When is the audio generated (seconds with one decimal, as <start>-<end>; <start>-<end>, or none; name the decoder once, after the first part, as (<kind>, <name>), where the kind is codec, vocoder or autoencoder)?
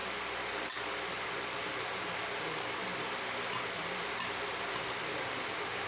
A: 1.6-2.8 (vocoder, BigVGAN v2); 5.2-5.9